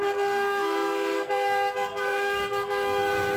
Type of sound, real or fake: fake